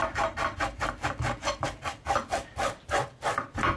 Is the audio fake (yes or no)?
no